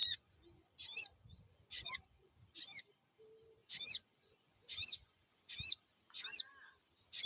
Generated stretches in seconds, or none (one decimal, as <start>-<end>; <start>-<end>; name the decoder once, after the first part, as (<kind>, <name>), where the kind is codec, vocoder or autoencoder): 0.0-0.7 (vocoder, Vocos); 1.3-2.3; 3.6-5.5